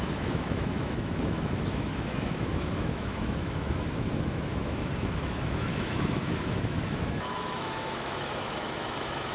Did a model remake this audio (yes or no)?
yes